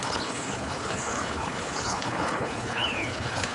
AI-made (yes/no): yes